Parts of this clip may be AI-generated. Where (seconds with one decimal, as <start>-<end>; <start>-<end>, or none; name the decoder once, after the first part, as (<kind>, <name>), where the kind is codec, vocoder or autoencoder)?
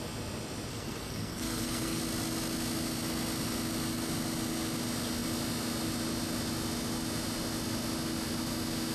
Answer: 0.7-2.0 (codec, SNAC)